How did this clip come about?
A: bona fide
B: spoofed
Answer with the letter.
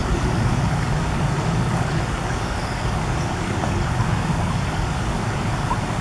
B